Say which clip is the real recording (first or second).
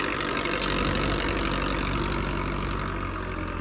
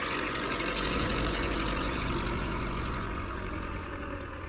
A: first